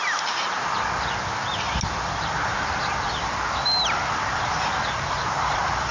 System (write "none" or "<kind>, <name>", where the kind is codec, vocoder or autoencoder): none